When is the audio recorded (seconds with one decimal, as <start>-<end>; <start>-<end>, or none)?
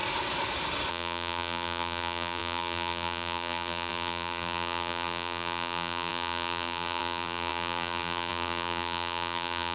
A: 0.0-0.9